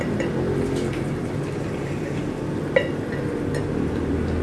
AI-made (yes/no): no